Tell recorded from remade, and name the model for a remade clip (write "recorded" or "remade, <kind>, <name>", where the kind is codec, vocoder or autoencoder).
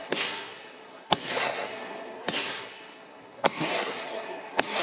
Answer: remade, codec, SNAC